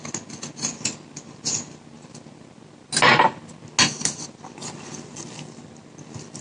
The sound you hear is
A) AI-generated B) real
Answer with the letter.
B